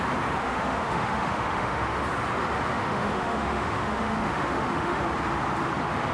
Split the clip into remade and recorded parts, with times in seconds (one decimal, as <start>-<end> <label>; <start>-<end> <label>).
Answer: 0.0-0.4 recorded; 0.4-2.0 remade; 2.0-2.7 recorded; 2.7-5.0 remade; 5.0-6.1 recorded